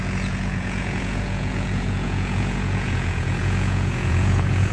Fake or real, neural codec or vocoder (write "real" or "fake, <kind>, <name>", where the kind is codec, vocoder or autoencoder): fake, vocoder, Vocos